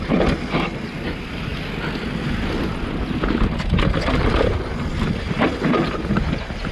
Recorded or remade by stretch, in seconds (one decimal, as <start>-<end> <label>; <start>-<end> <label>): 0.0-6.7 recorded